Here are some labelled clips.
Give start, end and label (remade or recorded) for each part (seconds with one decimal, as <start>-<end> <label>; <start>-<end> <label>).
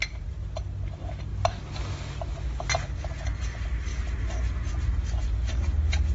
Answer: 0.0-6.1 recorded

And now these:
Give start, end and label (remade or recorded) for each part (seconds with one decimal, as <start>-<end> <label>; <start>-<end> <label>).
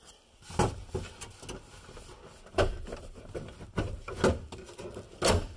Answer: 0.0-2.5 recorded; 2.5-3.2 remade; 3.2-5.6 recorded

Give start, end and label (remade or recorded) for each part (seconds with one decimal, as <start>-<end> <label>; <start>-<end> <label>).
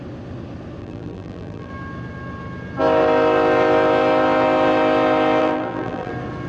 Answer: 0.0-0.8 recorded; 0.8-1.7 remade; 1.7-5.4 recorded; 5.4-6.1 remade; 6.1-6.5 recorded